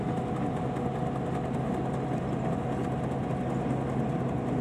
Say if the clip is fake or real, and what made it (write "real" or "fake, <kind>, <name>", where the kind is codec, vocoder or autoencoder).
real